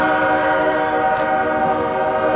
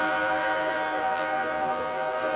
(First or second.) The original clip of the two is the first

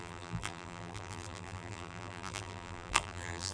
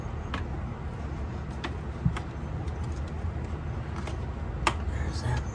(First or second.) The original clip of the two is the second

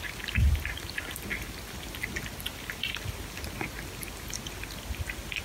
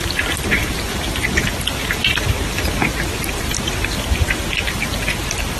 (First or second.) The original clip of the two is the first